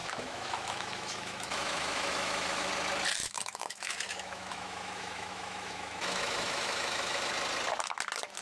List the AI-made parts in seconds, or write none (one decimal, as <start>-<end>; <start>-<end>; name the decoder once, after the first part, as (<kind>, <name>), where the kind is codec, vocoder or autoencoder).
0.0-2.7 (autoencoder, DAC-VAE); 3.2-7.3